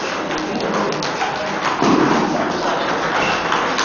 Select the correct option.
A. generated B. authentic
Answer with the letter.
B